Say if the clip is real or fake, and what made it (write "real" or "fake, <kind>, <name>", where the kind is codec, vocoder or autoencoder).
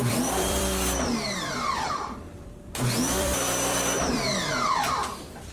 fake, vocoder, BigVGAN v2